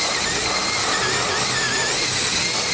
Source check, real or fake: real